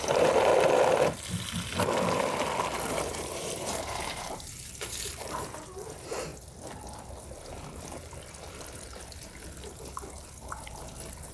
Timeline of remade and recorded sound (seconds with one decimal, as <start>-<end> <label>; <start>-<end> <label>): 0.0-0.5 remade; 0.5-2.9 recorded; 2.9-6.3 remade; 6.3-11.3 recorded